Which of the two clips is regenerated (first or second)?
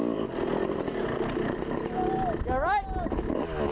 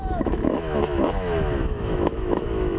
second